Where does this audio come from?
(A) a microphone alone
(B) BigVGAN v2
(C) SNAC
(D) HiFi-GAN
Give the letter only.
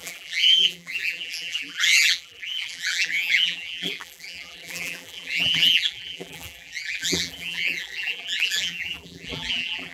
B